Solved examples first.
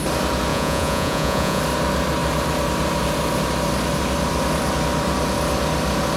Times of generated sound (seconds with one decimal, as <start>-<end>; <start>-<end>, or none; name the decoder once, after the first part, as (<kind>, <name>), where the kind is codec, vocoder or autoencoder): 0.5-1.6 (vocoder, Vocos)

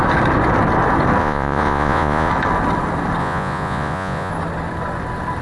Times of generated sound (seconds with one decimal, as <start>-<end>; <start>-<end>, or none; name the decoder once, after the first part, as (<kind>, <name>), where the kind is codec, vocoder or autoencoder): 1.2-2.3 (vocoder, Vocos); 3.2-4.3

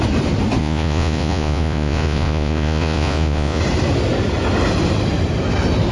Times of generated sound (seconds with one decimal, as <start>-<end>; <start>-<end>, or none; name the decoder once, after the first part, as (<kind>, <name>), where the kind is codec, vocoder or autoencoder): 0.6-3.6 (vocoder, Vocos)